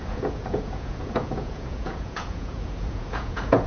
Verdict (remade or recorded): remade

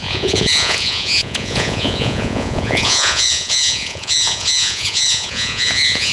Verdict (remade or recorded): remade